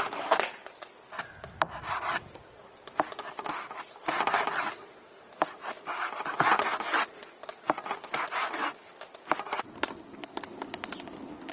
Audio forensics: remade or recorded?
recorded